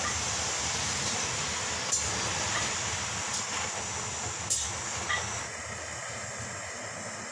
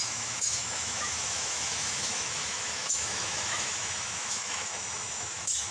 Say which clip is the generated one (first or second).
second